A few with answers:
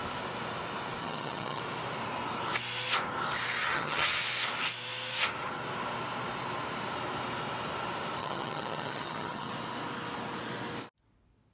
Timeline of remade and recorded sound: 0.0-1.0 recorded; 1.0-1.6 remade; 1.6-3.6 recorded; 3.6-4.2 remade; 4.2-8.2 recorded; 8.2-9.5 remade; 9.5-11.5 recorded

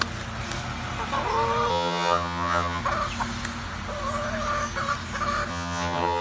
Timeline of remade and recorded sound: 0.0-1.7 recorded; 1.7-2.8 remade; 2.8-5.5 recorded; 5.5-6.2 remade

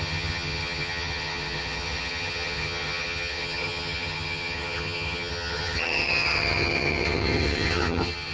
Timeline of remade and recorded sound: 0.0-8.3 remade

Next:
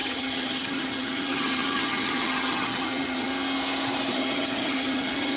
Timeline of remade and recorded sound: 0.0-3.3 remade; 3.3-4.1 recorded; 4.1-5.4 remade

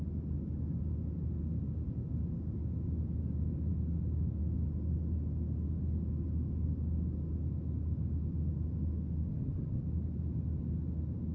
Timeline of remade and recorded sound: 0.0-9.3 recorded; 9.3-9.8 remade; 9.8-11.3 recorded